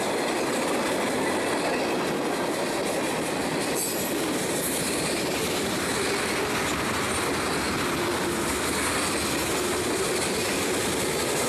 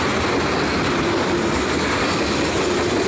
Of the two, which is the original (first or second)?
first